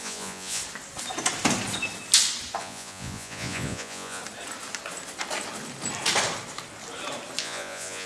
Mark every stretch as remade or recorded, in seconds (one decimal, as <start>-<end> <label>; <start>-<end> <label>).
0.0-0.6 remade; 0.6-2.6 recorded; 2.6-4.2 remade; 4.2-7.4 recorded; 7.4-8.1 remade